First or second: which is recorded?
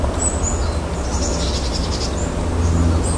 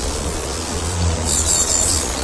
first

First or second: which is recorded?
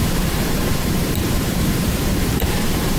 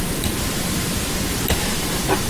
second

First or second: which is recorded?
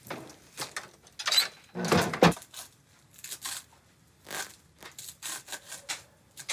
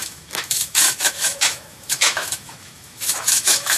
first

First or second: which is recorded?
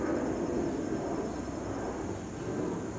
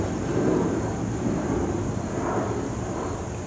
first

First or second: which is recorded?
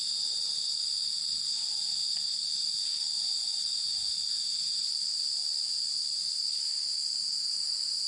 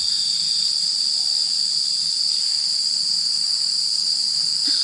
first